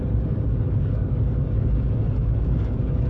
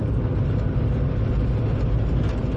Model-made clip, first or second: first